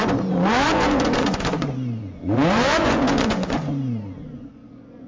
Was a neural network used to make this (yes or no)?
yes